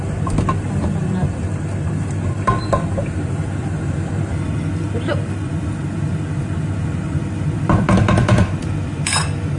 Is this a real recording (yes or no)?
no